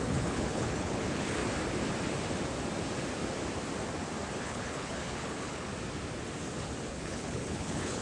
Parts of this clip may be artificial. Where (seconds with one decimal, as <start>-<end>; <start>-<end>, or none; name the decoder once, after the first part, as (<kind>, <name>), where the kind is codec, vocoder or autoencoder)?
0.0-1.4 (codec, HILCodec); 4.4-5.7; 6.9-8.0